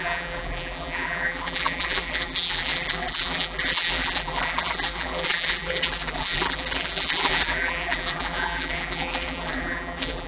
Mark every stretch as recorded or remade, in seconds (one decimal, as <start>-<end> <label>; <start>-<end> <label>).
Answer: 0.0-10.3 remade